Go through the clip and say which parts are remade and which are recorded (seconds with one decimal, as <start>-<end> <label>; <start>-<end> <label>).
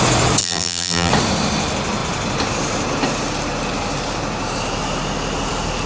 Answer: 0.0-0.4 recorded; 0.4-1.1 remade; 1.1-5.9 recorded